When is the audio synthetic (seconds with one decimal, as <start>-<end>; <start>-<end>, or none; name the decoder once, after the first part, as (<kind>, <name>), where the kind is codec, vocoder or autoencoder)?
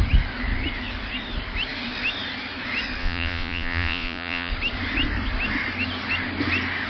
3.0-4.5 (vocoder, Vocos)